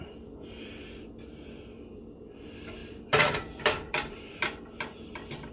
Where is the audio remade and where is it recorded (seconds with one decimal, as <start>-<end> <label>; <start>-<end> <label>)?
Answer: 0.0-2.8 recorded; 2.8-5.5 remade